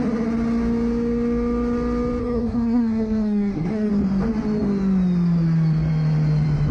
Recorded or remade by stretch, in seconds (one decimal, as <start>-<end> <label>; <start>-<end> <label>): 0.0-2.2 recorded; 2.2-3.9 remade; 3.9-6.7 recorded